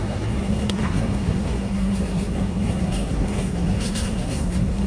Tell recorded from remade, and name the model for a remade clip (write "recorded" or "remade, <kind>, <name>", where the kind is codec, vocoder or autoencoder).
remade, codec, SNAC